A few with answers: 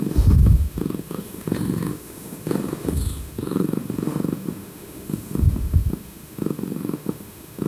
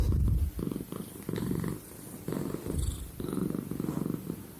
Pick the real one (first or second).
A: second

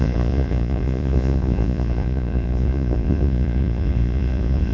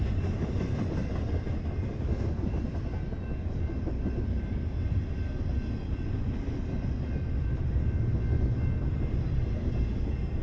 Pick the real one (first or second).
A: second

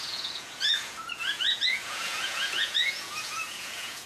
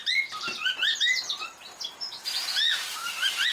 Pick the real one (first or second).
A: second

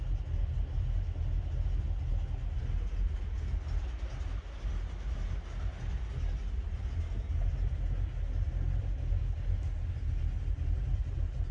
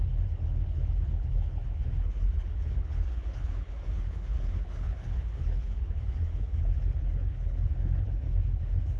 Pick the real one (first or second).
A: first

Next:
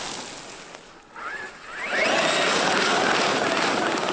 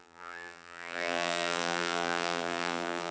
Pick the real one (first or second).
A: first